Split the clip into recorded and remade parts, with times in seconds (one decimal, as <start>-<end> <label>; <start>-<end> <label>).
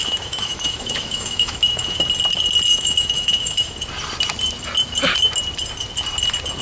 0.0-2.0 remade; 2.0-2.7 recorded; 2.7-3.7 remade; 3.7-6.6 recorded